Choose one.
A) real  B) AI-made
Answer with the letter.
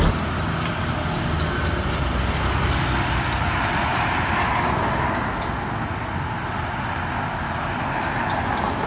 A